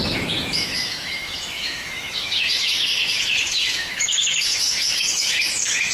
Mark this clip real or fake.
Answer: fake